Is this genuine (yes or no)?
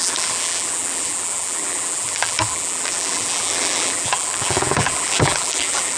no